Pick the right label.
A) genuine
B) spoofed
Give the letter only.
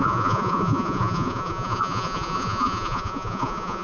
B